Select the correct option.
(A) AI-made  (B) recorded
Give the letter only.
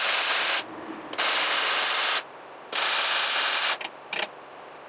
B